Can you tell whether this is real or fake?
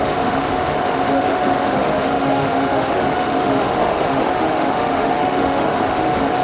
fake